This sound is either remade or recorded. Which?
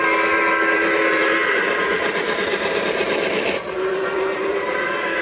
remade